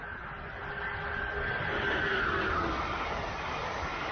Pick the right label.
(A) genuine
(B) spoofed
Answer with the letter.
A